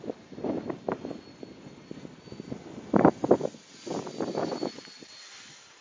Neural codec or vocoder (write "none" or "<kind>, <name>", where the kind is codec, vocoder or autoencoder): none